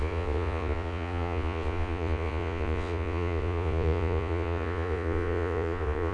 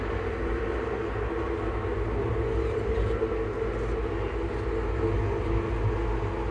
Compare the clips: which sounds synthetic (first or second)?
first